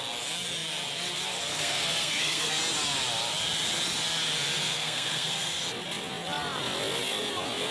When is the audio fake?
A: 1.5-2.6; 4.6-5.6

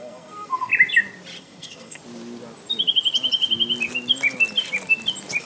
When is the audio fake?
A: 0.0-0.7; 1.4-2.0